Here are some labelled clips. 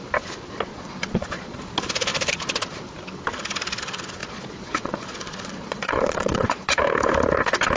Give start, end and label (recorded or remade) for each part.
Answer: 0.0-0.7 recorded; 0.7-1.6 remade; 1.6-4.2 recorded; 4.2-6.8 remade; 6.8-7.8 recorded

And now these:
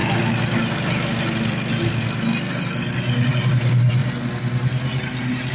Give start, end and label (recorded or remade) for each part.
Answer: 0.0-5.5 recorded

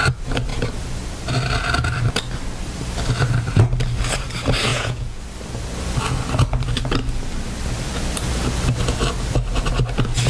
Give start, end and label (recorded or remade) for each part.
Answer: 0.0-4.7 recorded; 4.7-5.2 remade; 5.2-10.3 recorded

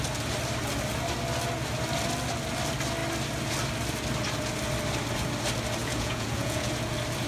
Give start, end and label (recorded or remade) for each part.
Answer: 0.0-5.8 recorded; 5.8-6.7 remade; 6.7-7.3 recorded

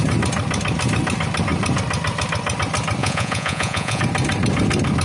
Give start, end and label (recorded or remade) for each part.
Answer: 0.0-3.0 recorded; 3.0-4.0 remade; 4.0-5.0 recorded